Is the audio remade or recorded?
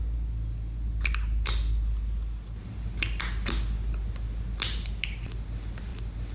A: recorded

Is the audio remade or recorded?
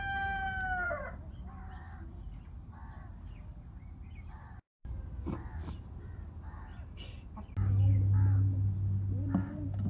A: recorded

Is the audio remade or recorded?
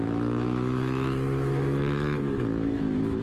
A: remade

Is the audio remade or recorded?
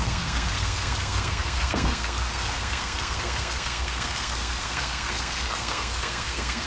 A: remade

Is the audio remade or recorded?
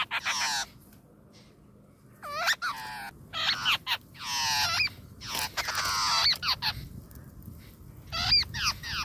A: recorded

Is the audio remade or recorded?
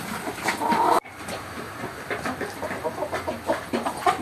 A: recorded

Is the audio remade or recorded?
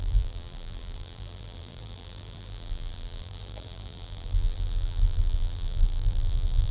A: remade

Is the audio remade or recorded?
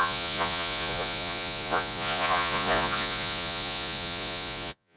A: remade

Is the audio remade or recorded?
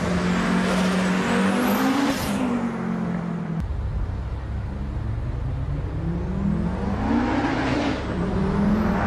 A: recorded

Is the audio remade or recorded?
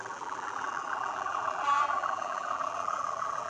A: remade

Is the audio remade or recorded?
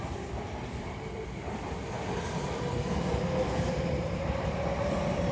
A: remade